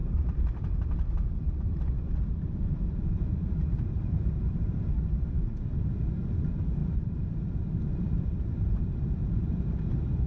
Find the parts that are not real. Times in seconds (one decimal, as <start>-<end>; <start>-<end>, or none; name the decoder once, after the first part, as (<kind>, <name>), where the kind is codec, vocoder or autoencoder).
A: 0.0-4.8 (vocoder, BigVGAN v2); 6.8-9.9